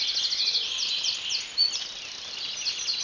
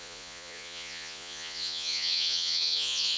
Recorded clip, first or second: first